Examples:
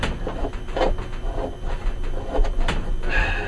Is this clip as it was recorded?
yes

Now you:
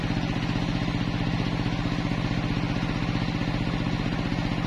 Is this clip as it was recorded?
yes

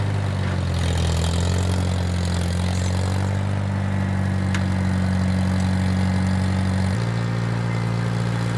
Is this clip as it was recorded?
yes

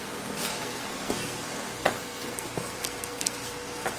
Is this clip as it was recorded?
no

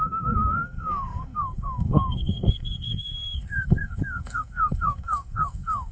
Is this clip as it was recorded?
no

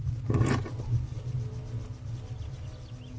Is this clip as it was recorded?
yes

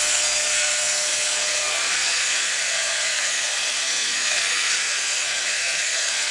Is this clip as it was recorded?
no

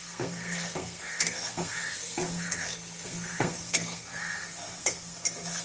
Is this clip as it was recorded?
no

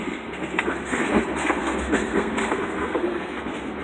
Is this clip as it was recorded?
no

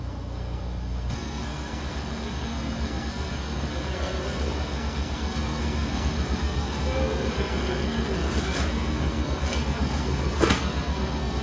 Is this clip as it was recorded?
no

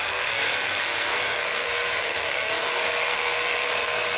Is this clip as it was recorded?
no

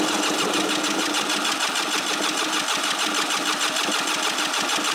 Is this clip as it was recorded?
yes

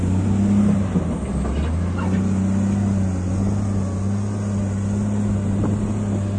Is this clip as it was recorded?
yes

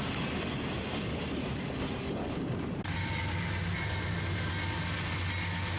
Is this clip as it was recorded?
yes